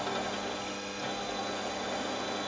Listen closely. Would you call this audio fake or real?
real